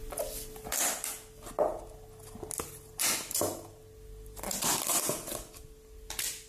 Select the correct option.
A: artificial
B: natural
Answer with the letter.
B